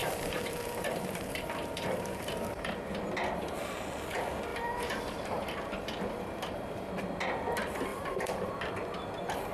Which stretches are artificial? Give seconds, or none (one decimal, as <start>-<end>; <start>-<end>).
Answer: 0.0-2.9; 4.5-6.9; 7.9-8.5